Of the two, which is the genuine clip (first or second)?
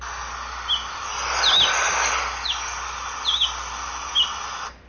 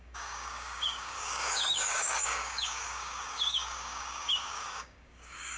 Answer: first